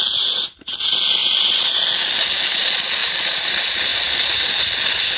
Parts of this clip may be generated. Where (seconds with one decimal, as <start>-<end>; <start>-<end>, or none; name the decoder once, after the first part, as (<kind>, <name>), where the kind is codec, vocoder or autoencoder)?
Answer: none